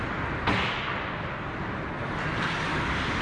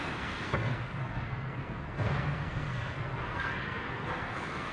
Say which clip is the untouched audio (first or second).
first